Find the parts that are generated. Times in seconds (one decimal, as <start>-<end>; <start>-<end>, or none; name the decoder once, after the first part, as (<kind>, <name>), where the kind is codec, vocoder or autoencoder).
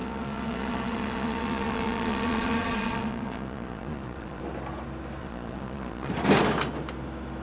0.0-4.4 (vocoder, Vocos); 5.2-6.1